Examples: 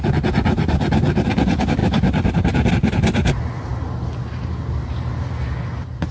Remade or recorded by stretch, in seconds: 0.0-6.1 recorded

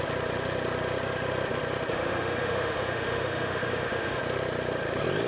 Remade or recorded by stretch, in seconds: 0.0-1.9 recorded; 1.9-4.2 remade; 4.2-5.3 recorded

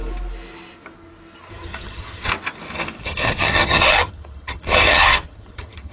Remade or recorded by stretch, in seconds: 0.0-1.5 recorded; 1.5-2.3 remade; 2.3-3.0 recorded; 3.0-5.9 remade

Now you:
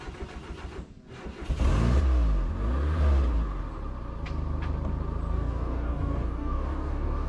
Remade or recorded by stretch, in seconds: 0.0-5.3 recorded; 5.3-7.3 remade

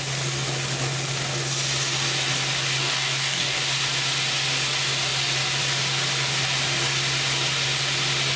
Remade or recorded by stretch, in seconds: 0.0-2.8 recorded; 2.8-3.6 remade; 3.6-8.4 recorded